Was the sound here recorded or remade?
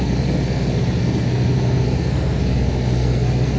remade